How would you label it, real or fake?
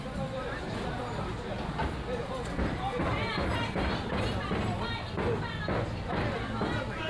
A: real